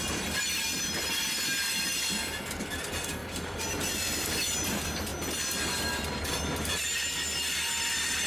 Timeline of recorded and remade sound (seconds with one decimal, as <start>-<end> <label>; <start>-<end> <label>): 0.0-8.3 recorded